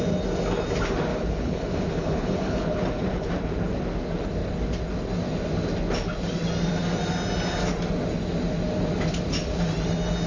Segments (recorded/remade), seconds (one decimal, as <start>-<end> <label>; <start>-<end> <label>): 0.0-1.1 recorded; 1.1-3.3 remade; 3.3-10.3 recorded